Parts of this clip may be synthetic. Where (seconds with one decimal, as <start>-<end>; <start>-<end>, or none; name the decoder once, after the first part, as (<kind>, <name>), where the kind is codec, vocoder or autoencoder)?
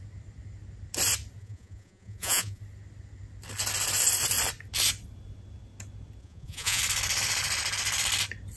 1.4-2.6 (vocoder, Vocos); 6.2-6.8